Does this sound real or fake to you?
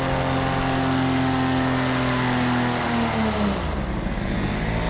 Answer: real